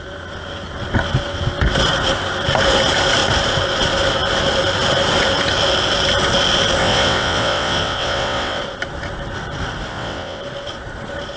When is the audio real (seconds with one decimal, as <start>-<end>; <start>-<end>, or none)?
0.0-6.8; 8.6-9.9; 10.4-11.4